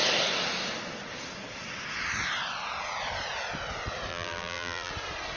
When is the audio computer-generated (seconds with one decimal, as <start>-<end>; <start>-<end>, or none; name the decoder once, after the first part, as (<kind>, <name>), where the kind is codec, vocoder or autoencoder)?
4.1-4.9 (vocoder, BigVGAN v2)